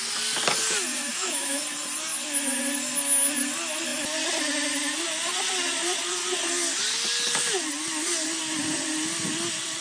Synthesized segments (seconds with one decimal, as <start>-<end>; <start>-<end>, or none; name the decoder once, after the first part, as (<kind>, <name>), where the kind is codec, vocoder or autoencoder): 1.1-1.6 (autoencoder, DAC-VAE)